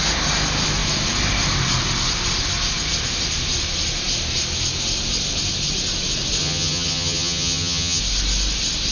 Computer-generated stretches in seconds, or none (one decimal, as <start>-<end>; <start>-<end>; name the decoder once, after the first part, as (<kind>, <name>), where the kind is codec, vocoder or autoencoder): 6.4-8.0 (vocoder, HiFi-GAN)